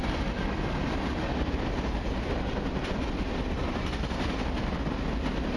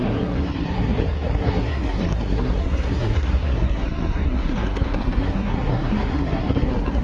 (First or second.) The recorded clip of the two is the first